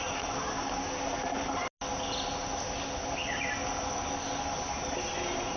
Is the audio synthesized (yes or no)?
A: no